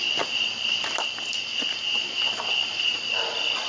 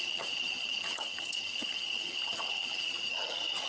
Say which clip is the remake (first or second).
second